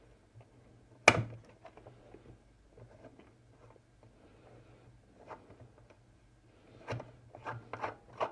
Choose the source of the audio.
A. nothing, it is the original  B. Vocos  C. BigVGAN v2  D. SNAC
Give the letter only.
A